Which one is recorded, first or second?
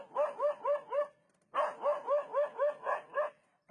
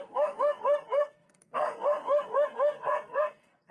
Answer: first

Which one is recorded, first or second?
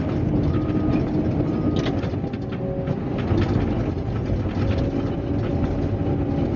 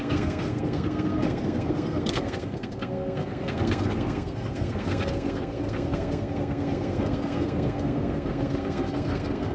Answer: first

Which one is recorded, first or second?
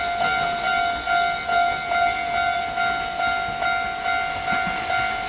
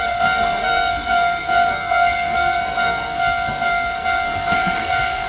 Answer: first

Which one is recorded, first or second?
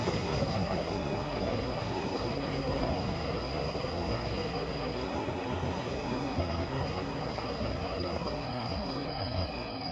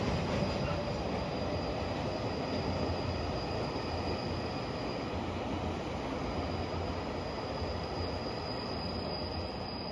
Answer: second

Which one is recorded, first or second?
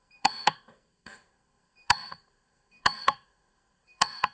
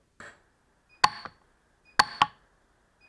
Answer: second